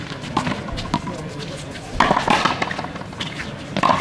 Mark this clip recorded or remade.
recorded